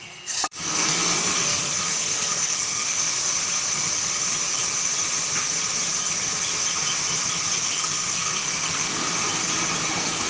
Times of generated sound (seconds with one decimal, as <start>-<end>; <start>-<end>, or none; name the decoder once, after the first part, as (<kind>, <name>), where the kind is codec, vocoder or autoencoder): 0.0-3.0 (codec, SNAC); 7.6-9.0; 9.9-10.3